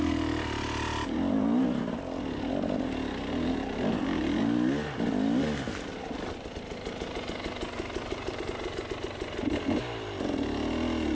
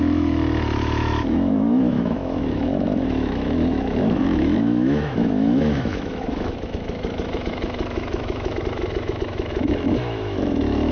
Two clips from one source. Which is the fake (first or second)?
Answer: second